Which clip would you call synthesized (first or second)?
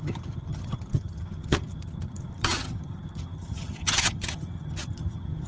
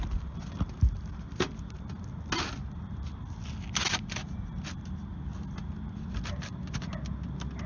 first